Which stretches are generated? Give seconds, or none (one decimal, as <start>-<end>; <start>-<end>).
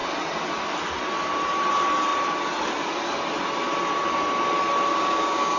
4.9-5.6